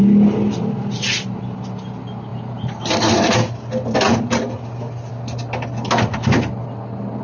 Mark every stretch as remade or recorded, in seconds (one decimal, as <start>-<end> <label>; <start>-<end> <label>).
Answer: 0.0-7.2 recorded